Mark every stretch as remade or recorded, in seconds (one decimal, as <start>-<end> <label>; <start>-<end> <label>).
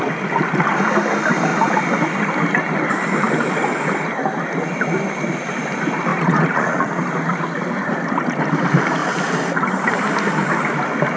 0.0-6.1 recorded; 6.1-7.0 remade; 7.0-11.2 recorded